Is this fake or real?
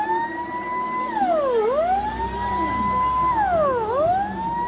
real